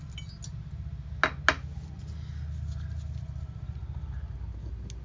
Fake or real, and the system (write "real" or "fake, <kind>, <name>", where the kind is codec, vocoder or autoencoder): real